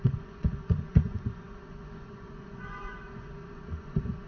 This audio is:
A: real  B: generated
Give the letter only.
B